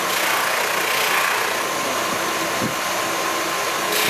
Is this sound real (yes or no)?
yes